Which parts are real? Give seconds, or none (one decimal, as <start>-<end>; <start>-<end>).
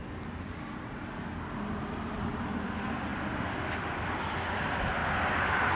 0.0-5.8